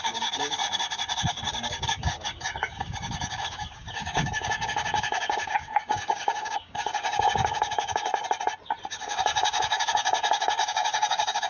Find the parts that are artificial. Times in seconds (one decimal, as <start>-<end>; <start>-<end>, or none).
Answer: 0.0-0.6; 1.2-8.1; 8.9-11.5